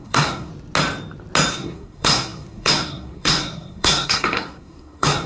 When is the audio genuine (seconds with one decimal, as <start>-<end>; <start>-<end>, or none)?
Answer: 0.5-1.5